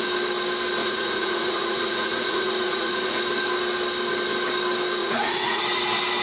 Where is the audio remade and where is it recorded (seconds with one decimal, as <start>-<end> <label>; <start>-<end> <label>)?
0.0-0.8 recorded; 0.8-3.2 remade; 3.2-5.0 recorded; 5.0-5.6 remade; 5.6-6.2 recorded

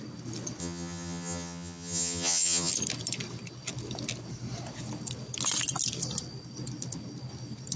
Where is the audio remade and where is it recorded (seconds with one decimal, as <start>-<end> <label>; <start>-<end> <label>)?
0.0-0.6 recorded; 0.6-2.7 remade; 2.7-7.8 recorded

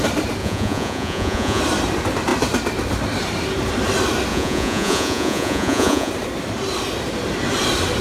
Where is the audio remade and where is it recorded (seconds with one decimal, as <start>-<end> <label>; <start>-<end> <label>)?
0.0-0.4 recorded; 0.4-1.6 remade; 1.6-4.3 recorded; 4.3-6.1 remade; 6.1-8.0 recorded

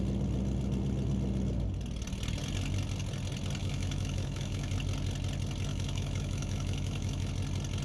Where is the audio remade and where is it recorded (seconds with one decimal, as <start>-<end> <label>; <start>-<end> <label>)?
0.0-3.6 recorded; 3.6-4.7 remade; 4.7-5.7 recorded; 5.7-7.3 remade; 7.3-7.8 recorded

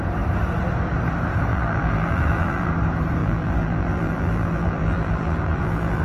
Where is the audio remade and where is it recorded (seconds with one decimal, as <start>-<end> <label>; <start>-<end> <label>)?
0.0-1.5 recorded; 1.5-2.7 remade; 2.7-3.2 recorded; 3.2-6.0 remade

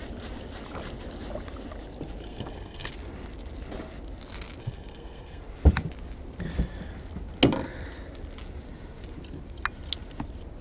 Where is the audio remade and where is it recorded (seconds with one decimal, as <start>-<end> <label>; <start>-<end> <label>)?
0.0-2.2 recorded; 2.2-2.9 remade; 2.9-4.6 recorded; 4.6-5.4 remade; 5.4-10.6 recorded